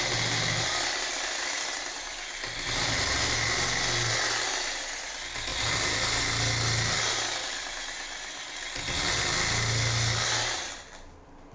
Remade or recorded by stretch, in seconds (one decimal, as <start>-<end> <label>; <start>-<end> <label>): 0.0-11.5 recorded